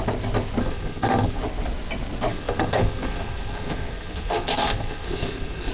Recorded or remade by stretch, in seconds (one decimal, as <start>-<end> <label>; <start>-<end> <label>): 0.0-0.6 recorded; 0.6-1.4 remade; 1.4-2.3 recorded; 2.3-5.7 remade